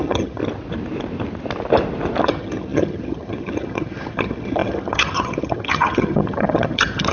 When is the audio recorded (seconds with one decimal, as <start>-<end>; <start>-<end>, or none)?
0.4-2.2